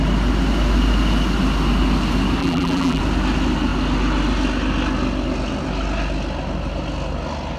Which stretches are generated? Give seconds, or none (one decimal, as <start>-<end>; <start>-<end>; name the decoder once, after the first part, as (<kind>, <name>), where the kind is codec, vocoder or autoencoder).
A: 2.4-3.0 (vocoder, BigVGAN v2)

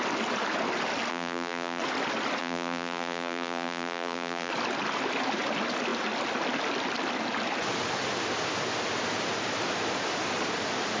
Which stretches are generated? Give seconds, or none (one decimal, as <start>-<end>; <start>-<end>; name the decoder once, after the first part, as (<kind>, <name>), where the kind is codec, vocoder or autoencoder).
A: 1.1-1.8 (vocoder, BigVGAN v2); 2.4-4.5

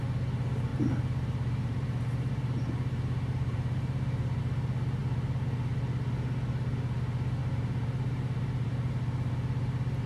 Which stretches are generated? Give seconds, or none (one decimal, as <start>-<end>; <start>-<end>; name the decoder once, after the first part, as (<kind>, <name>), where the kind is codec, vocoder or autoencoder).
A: 0.7-4.4 (vocoder, BigVGAN v2); 7.4-8.9

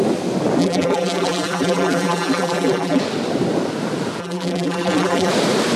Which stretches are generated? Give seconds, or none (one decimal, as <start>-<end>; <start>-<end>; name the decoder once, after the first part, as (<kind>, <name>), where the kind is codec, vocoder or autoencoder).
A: 0.6-3.0 (vocoder, BigVGAN v2); 4.2-5.3